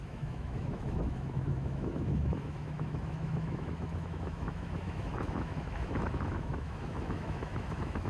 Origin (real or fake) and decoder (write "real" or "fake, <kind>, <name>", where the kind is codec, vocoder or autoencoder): fake, autoencoder, DAC-VAE